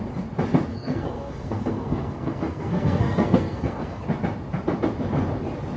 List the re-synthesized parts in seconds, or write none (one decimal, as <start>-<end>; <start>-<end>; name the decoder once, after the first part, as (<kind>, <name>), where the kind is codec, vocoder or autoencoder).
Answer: 0.7-4.0 (codec, SNAC)